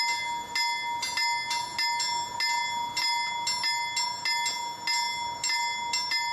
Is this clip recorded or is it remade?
recorded